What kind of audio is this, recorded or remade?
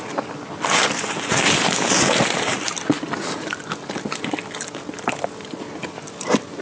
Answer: recorded